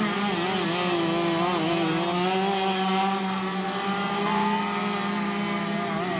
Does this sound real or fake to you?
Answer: real